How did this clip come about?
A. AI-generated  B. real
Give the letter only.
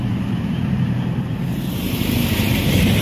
A